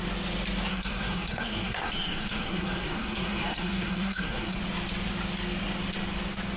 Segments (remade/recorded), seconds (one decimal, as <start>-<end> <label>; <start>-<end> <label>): 0.0-0.7 recorded; 0.7-4.6 remade; 4.6-6.6 recorded